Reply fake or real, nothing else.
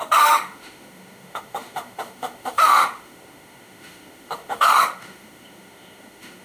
fake